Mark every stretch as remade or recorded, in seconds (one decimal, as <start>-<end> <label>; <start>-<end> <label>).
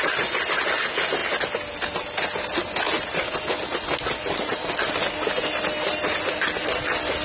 0.0-7.2 recorded